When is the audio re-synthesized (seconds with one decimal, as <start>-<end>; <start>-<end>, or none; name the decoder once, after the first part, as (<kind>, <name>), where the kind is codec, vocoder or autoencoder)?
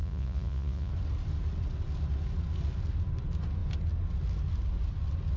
0.0-0.9 (vocoder, Vocos)